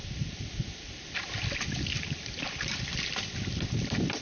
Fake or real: fake